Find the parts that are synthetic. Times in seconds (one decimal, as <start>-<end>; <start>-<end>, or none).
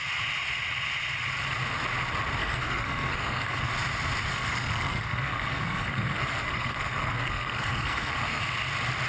2.4-3.6; 4.3-8.4